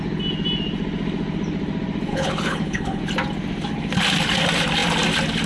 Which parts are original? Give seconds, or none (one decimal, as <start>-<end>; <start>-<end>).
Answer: 0.0-2.1; 3.0-5.5